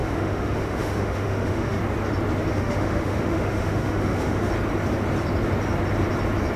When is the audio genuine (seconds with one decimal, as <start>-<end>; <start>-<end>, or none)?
1.8-2.5; 4.5-6.6